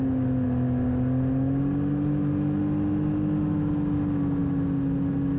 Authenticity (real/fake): real